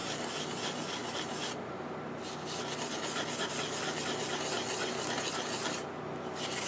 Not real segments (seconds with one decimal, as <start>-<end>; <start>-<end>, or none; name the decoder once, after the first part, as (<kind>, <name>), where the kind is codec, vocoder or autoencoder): none

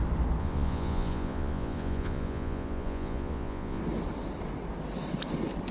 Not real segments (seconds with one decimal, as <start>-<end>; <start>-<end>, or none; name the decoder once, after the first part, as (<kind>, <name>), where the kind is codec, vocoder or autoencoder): 0.4-3.8 (vocoder, Vocos)

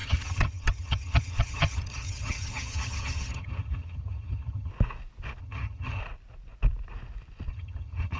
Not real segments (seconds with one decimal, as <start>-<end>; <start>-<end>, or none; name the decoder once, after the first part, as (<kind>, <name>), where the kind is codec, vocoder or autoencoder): 0.0-4.7 (vocoder, HiFi-GAN); 5.4-6.0; 7.5-8.2

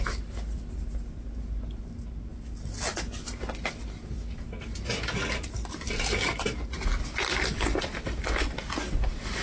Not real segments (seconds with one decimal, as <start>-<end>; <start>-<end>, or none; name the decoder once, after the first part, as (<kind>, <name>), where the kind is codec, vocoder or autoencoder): none